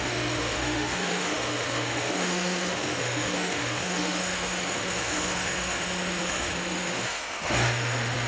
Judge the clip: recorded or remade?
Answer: remade